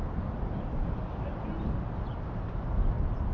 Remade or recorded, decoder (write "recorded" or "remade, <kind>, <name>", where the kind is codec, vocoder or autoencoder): recorded